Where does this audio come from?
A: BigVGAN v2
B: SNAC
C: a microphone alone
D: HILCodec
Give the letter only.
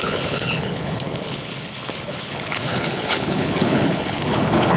D